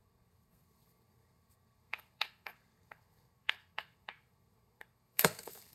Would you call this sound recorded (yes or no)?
no